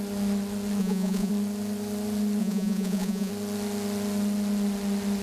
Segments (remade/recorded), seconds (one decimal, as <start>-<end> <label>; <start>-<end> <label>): 0.0-0.8 recorded; 0.8-1.3 remade; 1.3-2.4 recorded; 2.4-3.3 remade; 3.3-5.2 recorded